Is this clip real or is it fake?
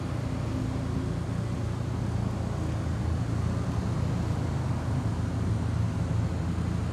real